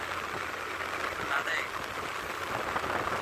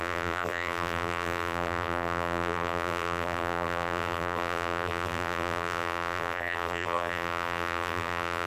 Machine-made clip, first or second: second